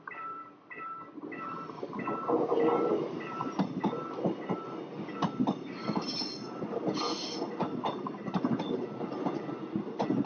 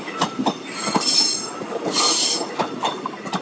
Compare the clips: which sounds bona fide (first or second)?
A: first